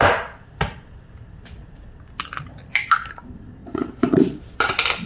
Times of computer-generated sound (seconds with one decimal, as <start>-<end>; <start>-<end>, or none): 3.6-4.4